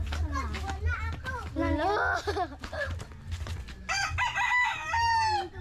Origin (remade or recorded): recorded